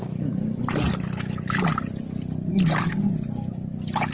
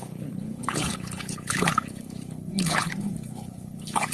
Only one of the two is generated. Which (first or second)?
second